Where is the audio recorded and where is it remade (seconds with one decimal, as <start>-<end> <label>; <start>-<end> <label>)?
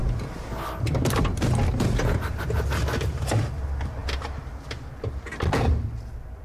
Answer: 0.0-6.4 recorded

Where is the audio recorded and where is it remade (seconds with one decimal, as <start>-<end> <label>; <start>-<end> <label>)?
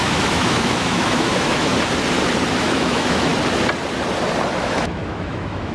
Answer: 0.0-1.7 remade; 1.7-2.6 recorded; 2.6-3.3 remade; 3.3-4.6 recorded; 4.6-5.7 remade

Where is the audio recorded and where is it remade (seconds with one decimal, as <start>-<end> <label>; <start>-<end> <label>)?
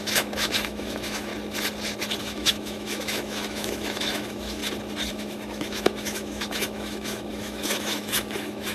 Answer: 0.0-1.3 remade; 1.3-2.2 recorded; 2.2-4.6 remade; 4.6-5.1 recorded; 5.1-8.7 remade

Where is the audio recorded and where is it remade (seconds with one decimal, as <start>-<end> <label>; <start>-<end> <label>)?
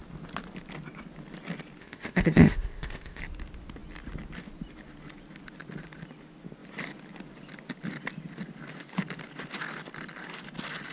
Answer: 0.0-1.8 recorded; 1.8-3.2 remade; 3.2-10.9 recorded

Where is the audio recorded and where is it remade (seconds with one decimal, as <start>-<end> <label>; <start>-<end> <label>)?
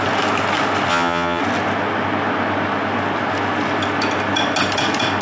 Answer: 0.0-0.9 recorded; 0.9-1.4 remade; 1.4-5.2 recorded